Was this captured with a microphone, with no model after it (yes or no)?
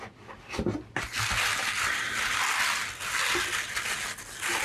yes